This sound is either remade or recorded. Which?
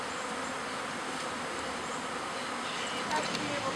recorded